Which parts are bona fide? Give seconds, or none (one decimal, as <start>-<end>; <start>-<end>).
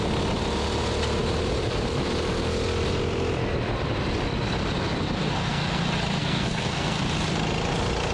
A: 0.0-5.2; 5.8-6.2; 7.0-8.1